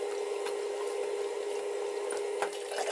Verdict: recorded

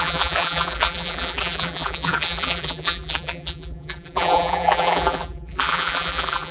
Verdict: remade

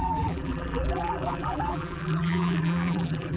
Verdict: remade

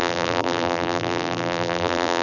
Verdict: remade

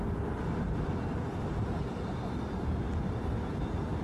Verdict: recorded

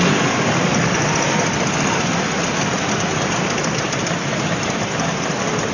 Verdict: recorded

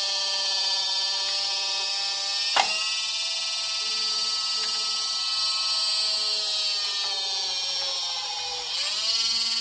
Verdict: recorded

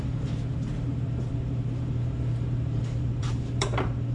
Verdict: remade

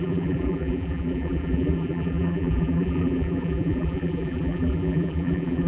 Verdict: remade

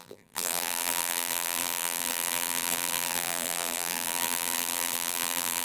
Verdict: remade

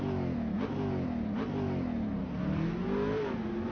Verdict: recorded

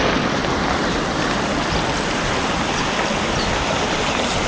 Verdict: recorded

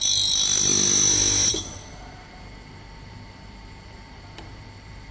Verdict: remade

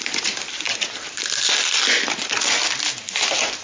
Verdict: recorded